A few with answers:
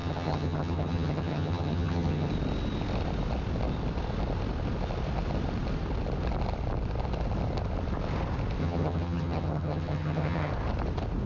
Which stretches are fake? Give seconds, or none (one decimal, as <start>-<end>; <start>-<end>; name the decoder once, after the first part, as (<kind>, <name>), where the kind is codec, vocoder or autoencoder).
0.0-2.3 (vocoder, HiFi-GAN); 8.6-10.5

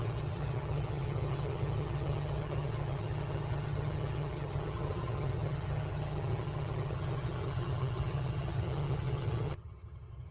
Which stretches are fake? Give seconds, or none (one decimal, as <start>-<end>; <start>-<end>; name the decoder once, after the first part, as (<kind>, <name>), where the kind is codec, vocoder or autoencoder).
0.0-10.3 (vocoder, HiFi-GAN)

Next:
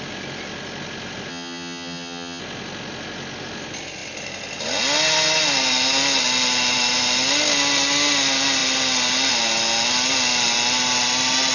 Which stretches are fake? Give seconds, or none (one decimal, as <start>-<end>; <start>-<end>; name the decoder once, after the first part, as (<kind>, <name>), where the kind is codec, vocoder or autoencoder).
1.3-2.4 (vocoder, HiFi-GAN)

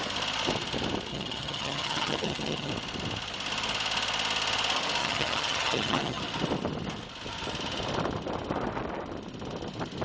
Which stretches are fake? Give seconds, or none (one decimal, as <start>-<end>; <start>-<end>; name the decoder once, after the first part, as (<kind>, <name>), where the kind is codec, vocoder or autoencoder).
1.1-2.7 (vocoder, HiFi-GAN); 5.0-6.2

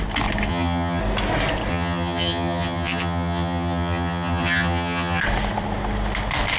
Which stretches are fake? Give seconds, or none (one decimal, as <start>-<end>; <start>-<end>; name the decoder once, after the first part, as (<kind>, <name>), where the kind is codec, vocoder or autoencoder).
0.5-1.0 (vocoder, HiFi-GAN); 1.7-5.2

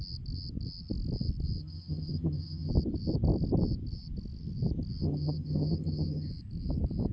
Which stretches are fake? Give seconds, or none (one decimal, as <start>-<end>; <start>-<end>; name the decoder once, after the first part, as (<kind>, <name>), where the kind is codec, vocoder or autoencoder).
1.6-2.7 (vocoder, HiFi-GAN); 5.0-6.3

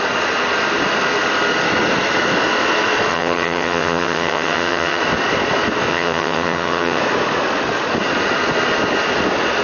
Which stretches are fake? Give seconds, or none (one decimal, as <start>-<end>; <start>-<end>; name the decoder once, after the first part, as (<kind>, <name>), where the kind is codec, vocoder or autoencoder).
3.1-5.0 (vocoder, HiFi-GAN); 5.9-7.0

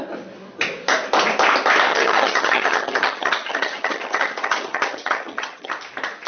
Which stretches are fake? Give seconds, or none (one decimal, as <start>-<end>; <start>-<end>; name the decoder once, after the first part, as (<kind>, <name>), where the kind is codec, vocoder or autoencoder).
1.9-5.7 (vocoder, HiFi-GAN)